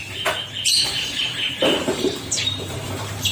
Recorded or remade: remade